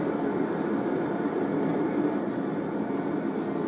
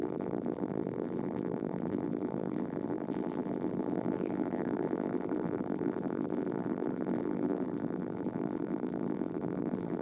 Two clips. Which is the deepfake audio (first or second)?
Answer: second